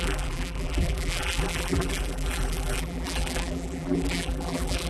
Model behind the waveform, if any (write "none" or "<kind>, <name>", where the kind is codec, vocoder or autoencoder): vocoder, BigVGAN v2